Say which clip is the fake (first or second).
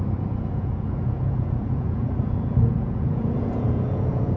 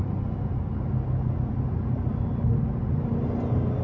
first